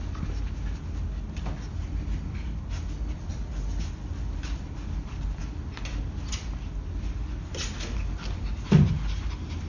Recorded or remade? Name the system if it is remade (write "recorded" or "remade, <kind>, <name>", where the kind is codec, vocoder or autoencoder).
recorded